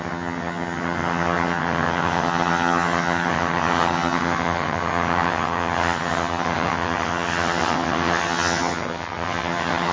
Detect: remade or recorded remade